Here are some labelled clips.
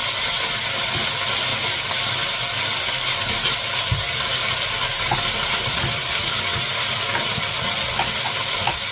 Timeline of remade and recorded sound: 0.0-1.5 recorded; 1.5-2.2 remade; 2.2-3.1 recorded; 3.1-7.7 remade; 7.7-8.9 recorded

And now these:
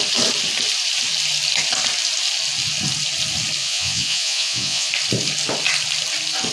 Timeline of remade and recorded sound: 0.0-3.6 recorded; 3.6-4.9 remade; 4.9-6.5 recorded

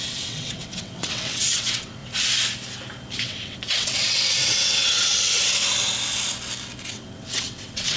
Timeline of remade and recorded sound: 0.0-2.0 remade; 2.0-3.2 recorded; 3.2-5.6 remade; 5.6-6.8 recorded; 6.8-8.0 remade

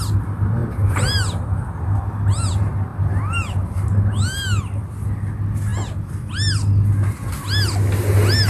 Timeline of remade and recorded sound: 0.0-8.5 recorded